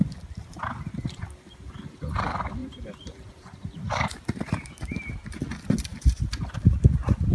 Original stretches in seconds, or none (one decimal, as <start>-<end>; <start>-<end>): 0.0-0.4; 1.8-2.6; 5.1-5.9; 6.5-7.3